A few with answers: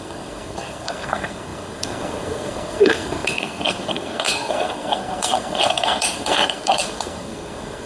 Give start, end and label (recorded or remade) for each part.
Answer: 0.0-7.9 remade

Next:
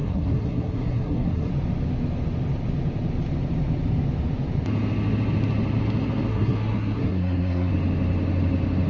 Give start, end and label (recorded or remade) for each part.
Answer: 0.0-1.5 remade; 1.5-6.3 recorded; 6.3-7.7 remade; 7.7-8.9 recorded

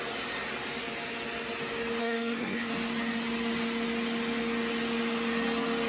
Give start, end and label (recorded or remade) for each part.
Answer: 0.0-2.0 recorded; 2.0-2.7 remade; 2.7-5.9 recorded

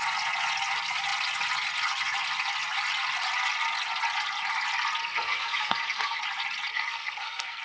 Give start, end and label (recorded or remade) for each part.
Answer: 0.0-5.0 recorded; 5.0-6.2 remade; 6.2-6.7 recorded; 6.7-7.6 remade